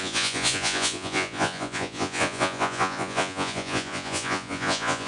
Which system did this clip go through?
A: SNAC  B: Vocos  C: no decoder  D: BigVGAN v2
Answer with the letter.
B